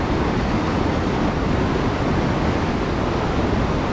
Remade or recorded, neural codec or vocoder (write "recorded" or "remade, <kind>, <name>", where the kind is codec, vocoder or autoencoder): recorded